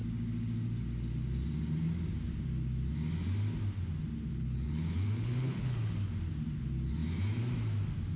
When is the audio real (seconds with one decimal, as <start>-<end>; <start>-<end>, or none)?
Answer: 0.0-4.3; 6.1-8.2